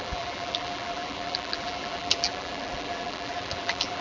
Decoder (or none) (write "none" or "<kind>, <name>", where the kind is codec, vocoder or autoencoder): vocoder, BigVGAN v2